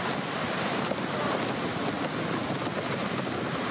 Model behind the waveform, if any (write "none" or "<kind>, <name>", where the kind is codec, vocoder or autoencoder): none